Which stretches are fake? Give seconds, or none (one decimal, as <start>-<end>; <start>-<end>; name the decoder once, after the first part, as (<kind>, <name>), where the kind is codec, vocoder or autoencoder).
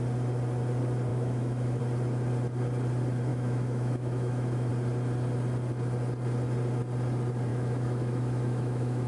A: 1.1-1.8 (autoencoder, DAC-VAE); 3.3-4.7; 7.5-9.1